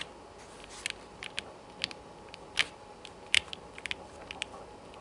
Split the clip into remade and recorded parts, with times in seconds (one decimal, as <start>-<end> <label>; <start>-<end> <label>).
0.0-5.0 recorded